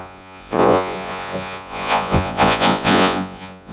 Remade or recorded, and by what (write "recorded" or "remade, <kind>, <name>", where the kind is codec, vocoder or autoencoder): remade, vocoder, Vocos